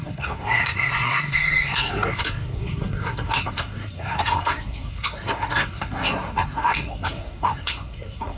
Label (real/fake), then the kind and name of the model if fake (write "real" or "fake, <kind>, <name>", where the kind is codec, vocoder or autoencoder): fake, codec, SNAC